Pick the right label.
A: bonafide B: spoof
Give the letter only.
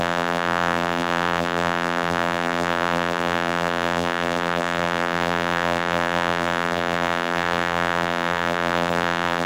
B